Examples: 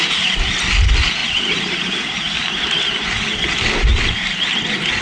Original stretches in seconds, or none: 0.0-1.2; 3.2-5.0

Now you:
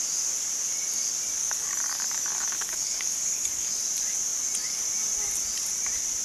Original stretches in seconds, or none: 0.0-1.4; 3.8-6.2

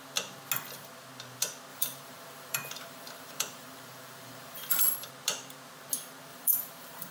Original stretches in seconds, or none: 0.0-1.7; 5.1-6.3

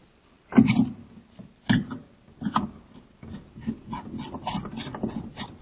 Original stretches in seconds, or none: 0.0-5.6

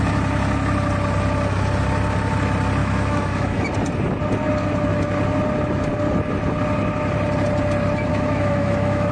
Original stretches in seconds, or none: 0.0-2.8; 3.7-8.1

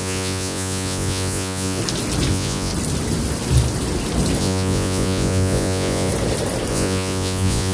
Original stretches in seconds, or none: 1.8-2.3; 2.7-4.4; 6.1-6.7

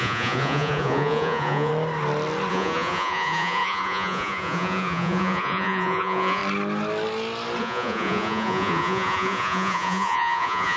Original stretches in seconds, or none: 1.7-2.5; 6.4-7.6

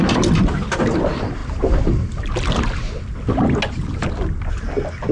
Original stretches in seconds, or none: 0.0-5.1